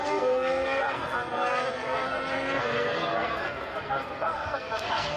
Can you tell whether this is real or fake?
fake